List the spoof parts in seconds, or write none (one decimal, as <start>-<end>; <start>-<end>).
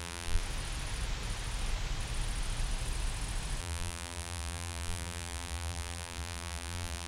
0.0-0.4; 3.6-7.1